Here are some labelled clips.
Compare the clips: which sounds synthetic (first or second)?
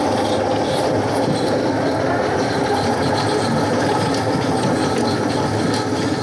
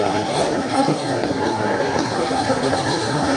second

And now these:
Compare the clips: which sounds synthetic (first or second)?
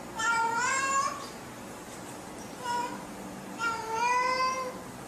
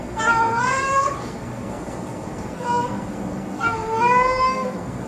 second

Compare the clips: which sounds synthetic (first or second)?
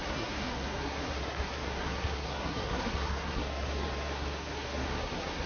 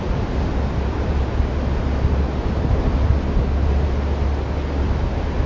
first